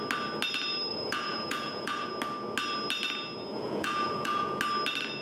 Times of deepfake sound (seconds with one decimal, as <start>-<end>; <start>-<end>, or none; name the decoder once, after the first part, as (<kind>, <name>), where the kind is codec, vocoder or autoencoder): 0.9-2.1 (vocoder, Vocos); 3.5-4.6